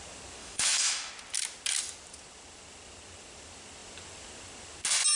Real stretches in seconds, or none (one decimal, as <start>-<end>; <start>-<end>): 0.0-0.4; 1.1-5.2